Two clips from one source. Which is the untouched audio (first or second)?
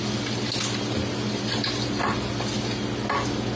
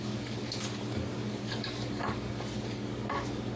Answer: first